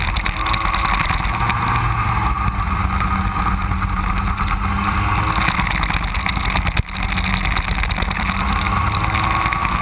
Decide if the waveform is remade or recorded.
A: recorded